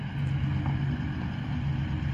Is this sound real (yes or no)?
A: yes